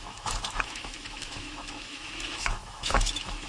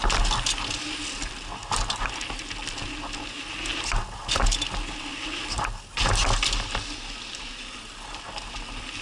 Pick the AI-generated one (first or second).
first